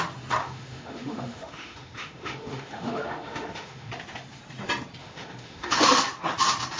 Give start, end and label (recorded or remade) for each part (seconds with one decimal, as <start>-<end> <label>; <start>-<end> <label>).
0.0-0.4 recorded; 0.4-3.9 remade; 3.9-5.0 recorded; 5.0-5.8 remade; 5.8-6.8 recorded